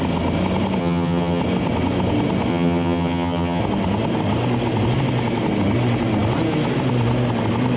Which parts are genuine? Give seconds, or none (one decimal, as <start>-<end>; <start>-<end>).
0.0-0.8; 1.4-2.5; 3.6-7.8